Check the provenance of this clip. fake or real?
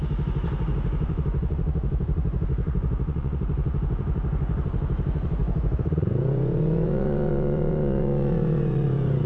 fake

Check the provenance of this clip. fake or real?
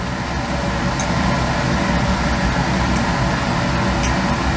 real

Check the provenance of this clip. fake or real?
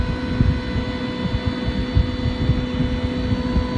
real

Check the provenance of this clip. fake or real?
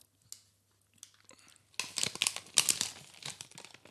real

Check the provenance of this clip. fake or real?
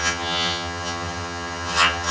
fake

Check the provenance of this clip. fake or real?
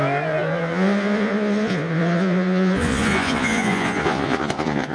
fake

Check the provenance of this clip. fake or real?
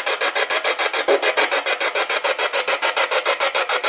real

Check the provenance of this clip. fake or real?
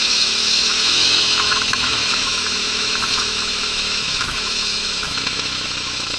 fake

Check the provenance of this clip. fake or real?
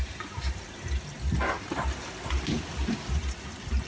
real